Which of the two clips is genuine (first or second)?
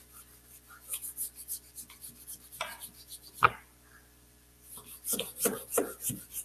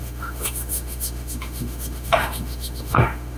first